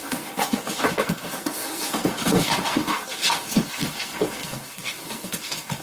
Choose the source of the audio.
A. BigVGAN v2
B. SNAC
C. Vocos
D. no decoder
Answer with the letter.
B